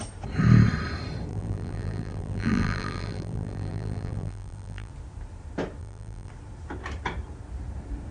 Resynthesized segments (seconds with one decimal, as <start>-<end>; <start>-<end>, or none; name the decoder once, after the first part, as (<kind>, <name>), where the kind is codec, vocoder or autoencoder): 1.3-4.9 (vocoder, BigVGAN v2); 5.8-6.3